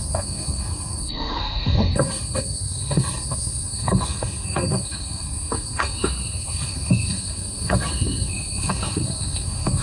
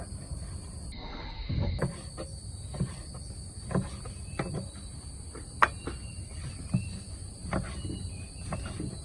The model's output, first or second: first